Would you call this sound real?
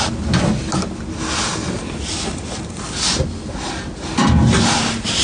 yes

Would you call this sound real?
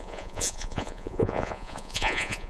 no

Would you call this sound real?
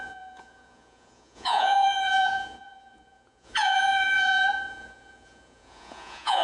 no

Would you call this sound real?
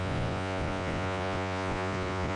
no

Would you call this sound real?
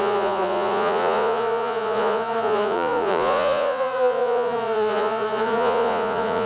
no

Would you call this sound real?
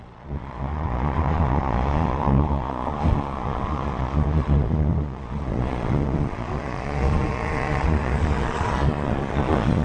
no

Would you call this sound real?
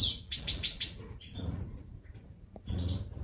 no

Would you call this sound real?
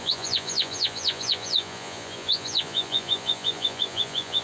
no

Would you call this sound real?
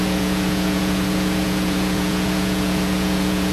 no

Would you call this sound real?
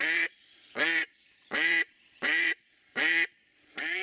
no